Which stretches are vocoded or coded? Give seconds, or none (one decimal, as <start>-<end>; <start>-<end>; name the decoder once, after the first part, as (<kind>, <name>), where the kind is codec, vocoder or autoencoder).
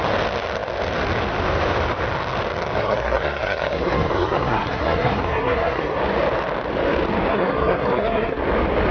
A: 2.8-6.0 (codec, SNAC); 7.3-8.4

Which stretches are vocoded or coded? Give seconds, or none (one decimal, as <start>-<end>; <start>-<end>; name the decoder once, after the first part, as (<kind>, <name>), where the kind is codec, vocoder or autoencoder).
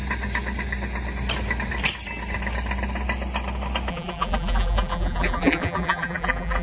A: 3.9-6.6 (vocoder, BigVGAN v2)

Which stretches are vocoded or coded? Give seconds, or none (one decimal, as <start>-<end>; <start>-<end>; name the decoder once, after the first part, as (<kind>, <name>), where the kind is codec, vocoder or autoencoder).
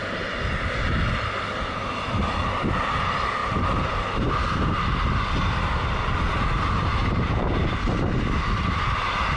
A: 3.4-3.9 (vocoder, BigVGAN v2); 7.0-8.0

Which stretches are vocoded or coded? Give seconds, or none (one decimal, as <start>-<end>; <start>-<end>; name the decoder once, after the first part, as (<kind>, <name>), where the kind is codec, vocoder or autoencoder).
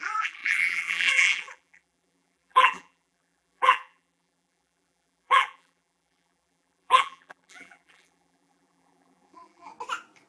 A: 0.0-9.7 (vocoder, BigVGAN v2)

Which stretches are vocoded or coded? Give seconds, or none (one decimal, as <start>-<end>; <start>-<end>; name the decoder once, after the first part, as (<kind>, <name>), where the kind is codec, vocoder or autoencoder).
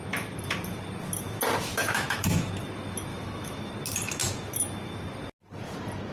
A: 1.7-2.5 (autoencoder, DAC-VAE); 3.1-3.7